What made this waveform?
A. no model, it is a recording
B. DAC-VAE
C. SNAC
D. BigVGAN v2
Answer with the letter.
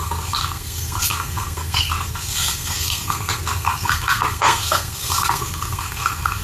C